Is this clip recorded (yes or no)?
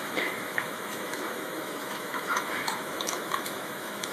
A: no